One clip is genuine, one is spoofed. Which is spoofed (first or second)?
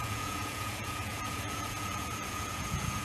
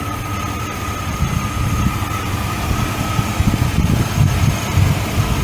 first